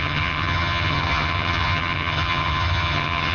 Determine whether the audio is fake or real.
fake